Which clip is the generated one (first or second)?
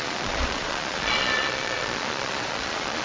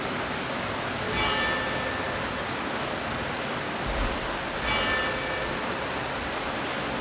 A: first